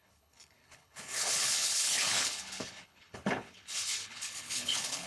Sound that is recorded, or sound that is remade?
remade